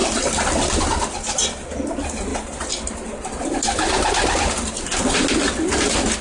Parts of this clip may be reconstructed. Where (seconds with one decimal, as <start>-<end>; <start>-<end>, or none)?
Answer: none